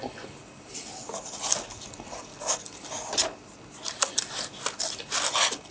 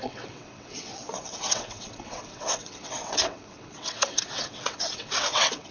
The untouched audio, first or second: first